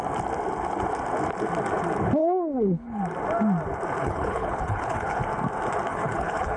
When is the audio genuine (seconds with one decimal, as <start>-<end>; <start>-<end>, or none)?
0.0-2.2; 3.0-4.0; 5.2-5.9